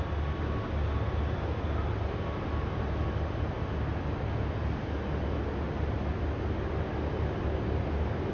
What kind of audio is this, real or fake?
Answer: real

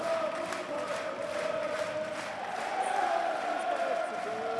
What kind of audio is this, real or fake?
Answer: real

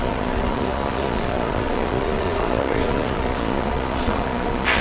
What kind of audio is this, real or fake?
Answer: fake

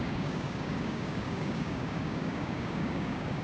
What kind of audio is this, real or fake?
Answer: fake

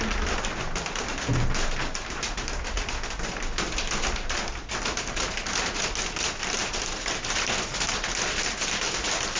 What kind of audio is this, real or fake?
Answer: real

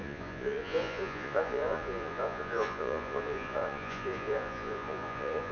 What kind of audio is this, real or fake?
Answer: fake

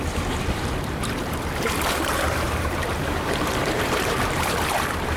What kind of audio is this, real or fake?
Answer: fake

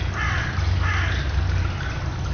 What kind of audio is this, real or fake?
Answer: real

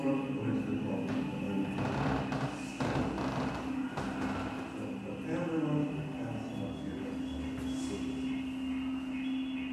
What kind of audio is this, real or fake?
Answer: real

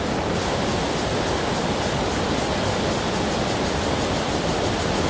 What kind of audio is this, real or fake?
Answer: real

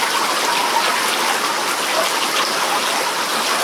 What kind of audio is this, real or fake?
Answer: real